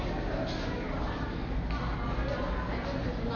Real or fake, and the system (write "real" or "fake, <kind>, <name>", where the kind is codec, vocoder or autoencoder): real